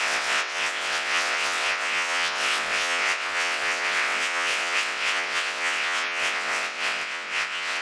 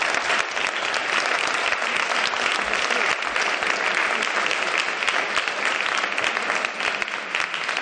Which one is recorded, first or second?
second